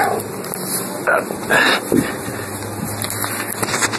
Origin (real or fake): real